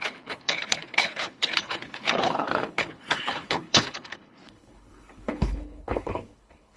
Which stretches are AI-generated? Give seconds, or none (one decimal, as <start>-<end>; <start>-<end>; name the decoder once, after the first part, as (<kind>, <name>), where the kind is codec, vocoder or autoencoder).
0.0-6.8 (codec, HILCodec)